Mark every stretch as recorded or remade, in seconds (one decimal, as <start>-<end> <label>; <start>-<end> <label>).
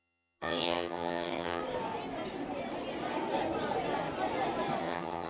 0.0-1.6 remade; 1.6-4.8 recorded; 4.8-5.3 remade